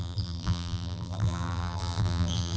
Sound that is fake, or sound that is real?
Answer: fake